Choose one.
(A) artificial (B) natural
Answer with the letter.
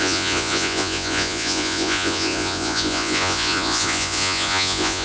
A